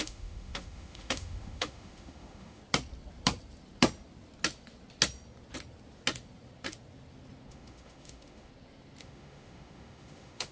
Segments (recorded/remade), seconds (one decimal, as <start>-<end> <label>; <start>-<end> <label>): 0.0-2.6 remade; 2.6-7.5 recorded; 7.5-8.5 remade; 8.5-9.0 recorded; 9.0-10.5 remade